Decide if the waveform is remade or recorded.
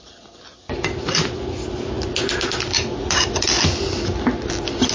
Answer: recorded